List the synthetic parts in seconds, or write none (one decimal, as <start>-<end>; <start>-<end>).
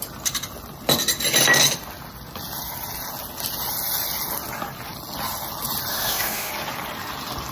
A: 5.9-6.5